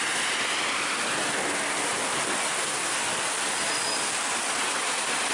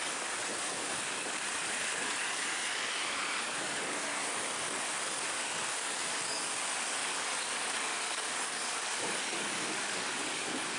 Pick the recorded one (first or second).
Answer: first